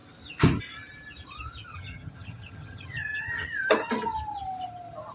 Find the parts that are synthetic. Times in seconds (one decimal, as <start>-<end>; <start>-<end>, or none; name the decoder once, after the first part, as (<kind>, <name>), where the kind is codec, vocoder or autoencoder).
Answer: 1.7-3.5 (vocoder, HiFi-GAN)